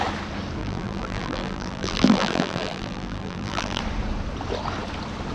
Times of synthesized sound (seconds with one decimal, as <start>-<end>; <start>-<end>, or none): 0.6-3.8